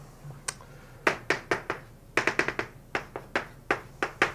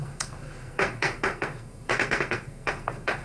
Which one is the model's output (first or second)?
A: second